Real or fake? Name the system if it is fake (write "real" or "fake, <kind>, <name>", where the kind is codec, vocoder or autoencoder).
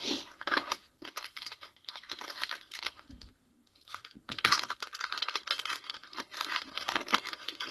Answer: fake, codec, SNAC